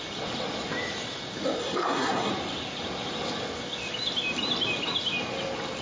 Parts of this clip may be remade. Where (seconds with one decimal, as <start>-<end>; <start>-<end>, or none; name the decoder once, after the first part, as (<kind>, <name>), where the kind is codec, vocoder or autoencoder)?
1.6-2.3 (codec, SNAC)